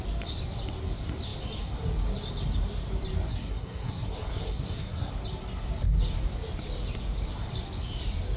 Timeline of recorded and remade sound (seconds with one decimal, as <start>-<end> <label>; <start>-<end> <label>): 0.0-3.3 recorded; 3.3-5.1 remade; 5.1-8.4 recorded